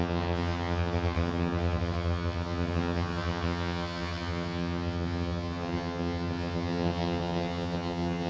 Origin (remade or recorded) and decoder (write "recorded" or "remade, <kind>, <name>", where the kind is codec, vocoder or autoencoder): remade, vocoder, HiFi-GAN